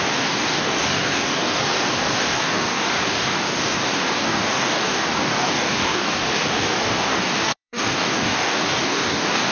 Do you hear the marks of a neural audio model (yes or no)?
yes